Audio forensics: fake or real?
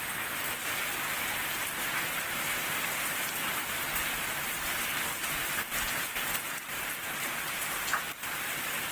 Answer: real